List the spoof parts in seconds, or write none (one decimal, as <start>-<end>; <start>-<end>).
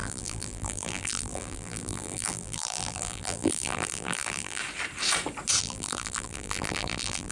0.0-4.6; 5.6-7.3